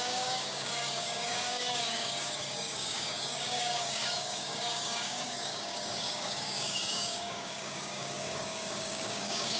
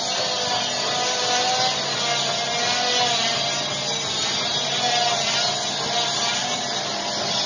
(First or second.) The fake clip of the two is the first